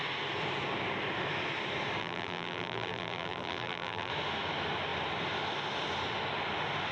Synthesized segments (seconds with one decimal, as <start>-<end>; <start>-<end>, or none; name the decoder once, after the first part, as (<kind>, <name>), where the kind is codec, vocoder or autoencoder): 2.0-4.1 (vocoder, BigVGAN v2)